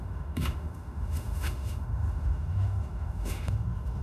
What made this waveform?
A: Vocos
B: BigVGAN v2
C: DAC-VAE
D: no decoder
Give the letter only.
C